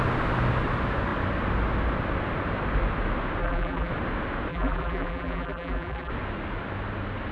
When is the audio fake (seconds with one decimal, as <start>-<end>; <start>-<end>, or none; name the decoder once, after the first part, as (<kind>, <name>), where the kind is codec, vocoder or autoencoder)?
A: 3.4-3.9 (vocoder, BigVGAN v2); 4.5-6.1